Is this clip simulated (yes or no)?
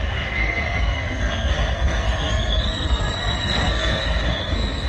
yes